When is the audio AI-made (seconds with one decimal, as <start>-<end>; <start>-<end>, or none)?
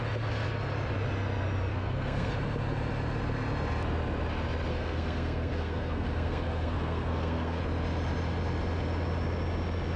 1.7-2.3; 4.7-7.6